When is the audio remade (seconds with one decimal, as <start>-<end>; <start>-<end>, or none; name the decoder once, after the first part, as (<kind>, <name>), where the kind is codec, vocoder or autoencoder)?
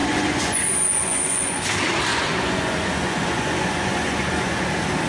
0.0-1.6 (vocoder, Vocos); 2.1-4.6